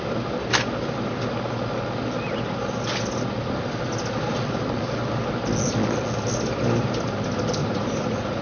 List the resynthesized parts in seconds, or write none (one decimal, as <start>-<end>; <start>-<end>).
7.6-8.4